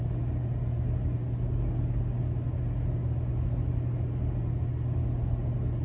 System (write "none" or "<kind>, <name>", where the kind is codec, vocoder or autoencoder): none